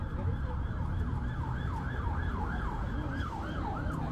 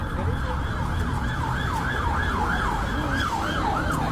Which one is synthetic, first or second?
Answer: first